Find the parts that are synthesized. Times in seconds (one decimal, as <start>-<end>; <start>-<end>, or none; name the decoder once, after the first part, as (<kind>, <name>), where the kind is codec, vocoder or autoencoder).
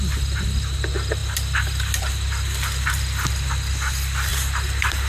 1.2-2.0 (vocoder, BigVGAN v2); 4.3-5.1